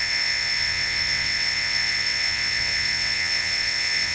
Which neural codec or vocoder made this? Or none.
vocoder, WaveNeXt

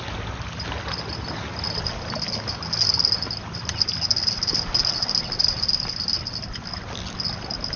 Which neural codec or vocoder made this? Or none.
none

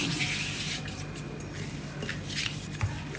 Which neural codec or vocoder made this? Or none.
none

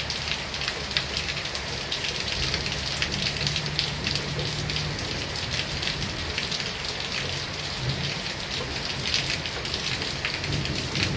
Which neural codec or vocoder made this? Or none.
vocoder, BigVGAN v2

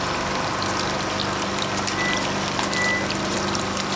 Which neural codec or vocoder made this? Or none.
none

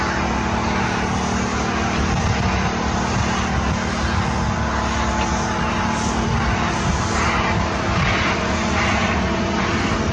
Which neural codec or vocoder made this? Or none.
none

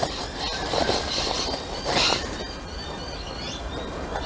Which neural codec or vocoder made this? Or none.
none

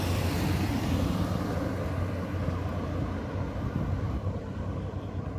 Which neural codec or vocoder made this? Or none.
none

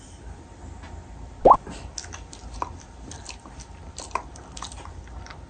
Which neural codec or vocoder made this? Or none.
none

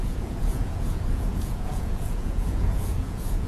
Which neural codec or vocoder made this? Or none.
vocoder, Vocos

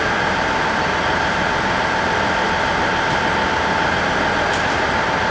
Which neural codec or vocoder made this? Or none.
none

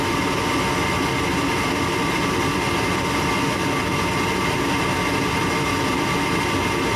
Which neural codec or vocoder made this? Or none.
none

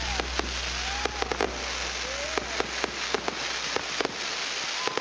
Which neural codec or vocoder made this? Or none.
none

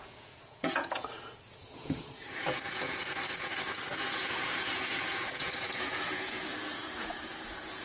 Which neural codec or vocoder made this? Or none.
vocoder, Vocos